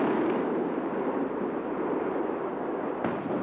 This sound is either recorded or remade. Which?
remade